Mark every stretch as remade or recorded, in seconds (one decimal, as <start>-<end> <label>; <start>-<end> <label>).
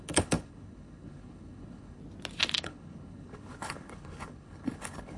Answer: 0.0-2.0 remade; 2.0-2.6 recorded; 2.6-5.2 remade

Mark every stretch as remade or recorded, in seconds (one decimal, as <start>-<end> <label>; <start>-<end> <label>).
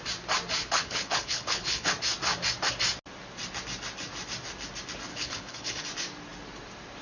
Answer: 0.0-0.6 recorded; 0.6-1.9 remade; 1.9-5.1 recorded; 5.1-5.8 remade; 5.8-7.0 recorded